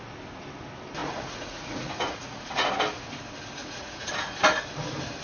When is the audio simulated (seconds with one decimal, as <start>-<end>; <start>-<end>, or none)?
1.0-2.7; 3.6-4.1